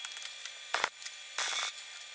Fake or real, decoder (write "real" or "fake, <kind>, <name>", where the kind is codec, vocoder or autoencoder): real